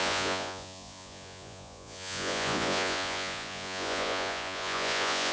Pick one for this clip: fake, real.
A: fake